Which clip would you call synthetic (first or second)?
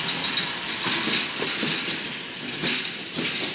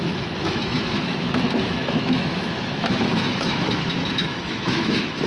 second